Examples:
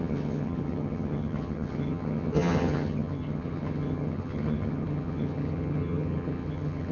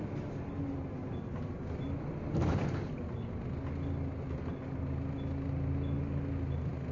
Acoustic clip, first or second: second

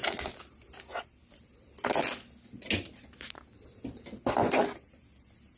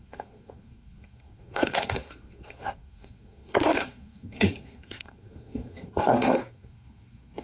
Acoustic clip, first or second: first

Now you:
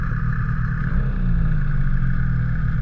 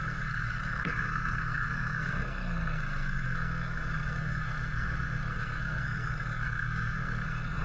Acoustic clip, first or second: first